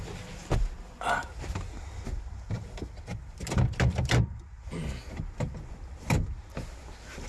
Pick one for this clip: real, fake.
real